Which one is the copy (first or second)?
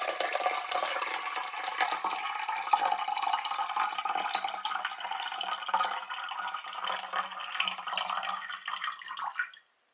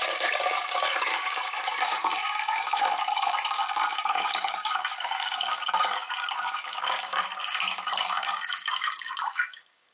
second